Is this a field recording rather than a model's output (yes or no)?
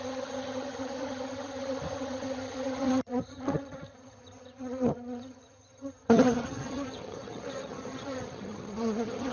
no